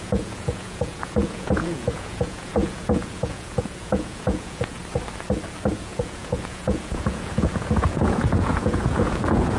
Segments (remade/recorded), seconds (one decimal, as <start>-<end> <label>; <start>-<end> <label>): 0.0-4.8 remade; 4.8-5.7 recorded; 5.7-9.6 remade